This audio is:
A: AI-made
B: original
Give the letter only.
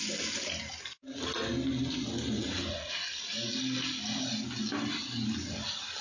B